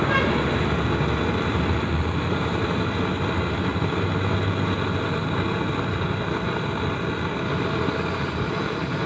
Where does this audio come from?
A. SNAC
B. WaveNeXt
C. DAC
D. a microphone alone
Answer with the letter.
D